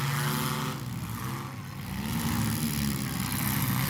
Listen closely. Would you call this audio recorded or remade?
recorded